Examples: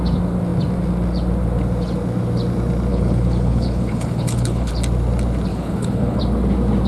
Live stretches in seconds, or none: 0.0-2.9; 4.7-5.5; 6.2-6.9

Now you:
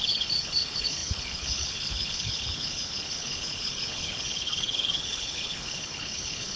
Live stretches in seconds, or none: none